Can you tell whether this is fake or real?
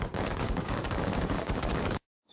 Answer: fake